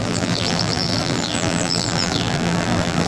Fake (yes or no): yes